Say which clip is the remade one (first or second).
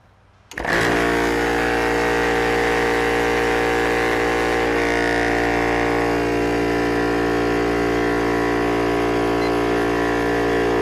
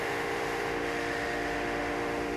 second